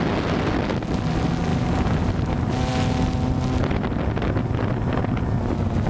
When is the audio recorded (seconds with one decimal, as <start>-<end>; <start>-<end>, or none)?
0.0-1.5; 2.1-5.9